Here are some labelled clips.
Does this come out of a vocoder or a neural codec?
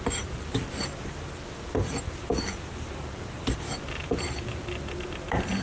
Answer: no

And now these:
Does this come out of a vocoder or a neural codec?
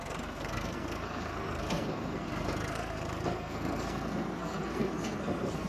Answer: yes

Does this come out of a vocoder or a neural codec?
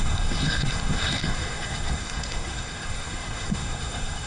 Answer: yes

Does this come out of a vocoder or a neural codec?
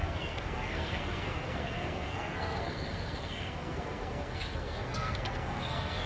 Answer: yes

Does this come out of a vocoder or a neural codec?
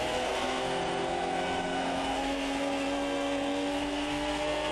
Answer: yes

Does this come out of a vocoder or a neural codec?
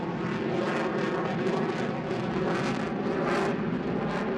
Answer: no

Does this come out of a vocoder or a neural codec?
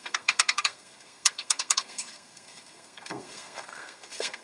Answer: yes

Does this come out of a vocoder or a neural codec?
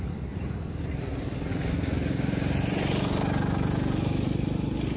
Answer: no